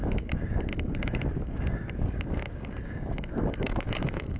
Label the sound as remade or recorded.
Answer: remade